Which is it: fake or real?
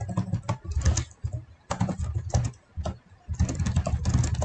real